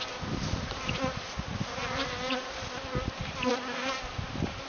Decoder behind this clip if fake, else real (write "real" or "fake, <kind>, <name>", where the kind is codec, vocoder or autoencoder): real